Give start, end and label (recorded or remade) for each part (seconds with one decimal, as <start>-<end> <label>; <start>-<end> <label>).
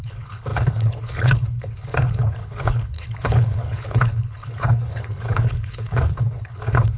0.0-7.0 remade